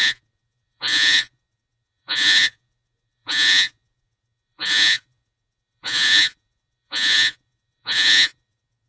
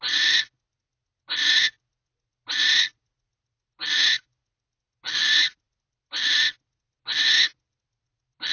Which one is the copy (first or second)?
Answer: first